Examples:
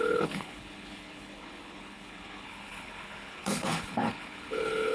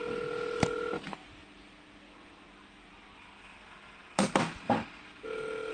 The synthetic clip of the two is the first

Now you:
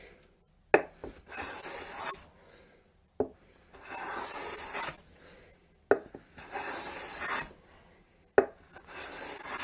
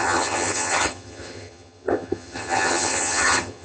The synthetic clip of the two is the second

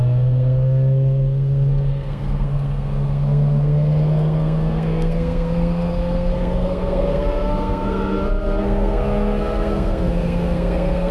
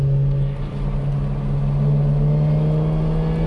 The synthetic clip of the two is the first